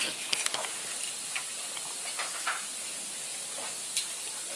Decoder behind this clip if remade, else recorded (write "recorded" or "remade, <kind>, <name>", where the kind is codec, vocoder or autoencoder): recorded